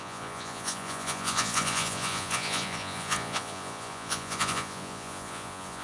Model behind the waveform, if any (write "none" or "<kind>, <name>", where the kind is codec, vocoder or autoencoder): vocoder, Vocos